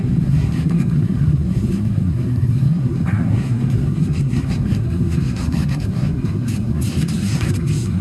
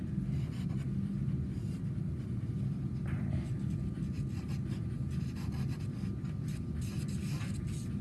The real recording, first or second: second